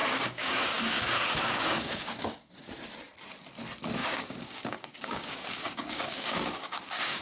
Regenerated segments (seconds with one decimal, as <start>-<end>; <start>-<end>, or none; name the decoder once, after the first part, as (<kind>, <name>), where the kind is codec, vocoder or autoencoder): 0.0-2.5 (codec, DAC); 4.0-7.2